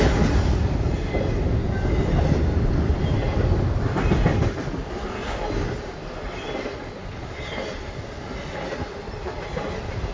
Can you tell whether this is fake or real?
real